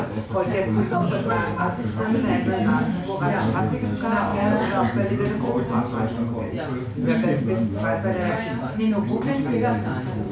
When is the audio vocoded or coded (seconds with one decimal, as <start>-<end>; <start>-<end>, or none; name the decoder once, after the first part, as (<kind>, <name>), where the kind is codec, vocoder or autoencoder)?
0.8-2.0 (codec, SNAC)